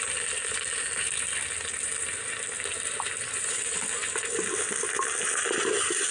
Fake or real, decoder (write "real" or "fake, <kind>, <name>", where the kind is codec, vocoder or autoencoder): fake, vocoder, BigVGAN v2